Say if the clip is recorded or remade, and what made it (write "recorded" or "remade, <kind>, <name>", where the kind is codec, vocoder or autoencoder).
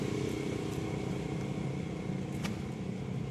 recorded